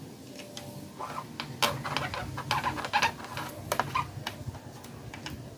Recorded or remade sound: recorded